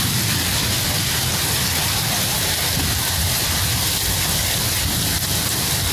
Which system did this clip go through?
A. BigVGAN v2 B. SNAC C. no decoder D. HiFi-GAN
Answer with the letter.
C